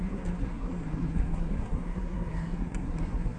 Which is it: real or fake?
fake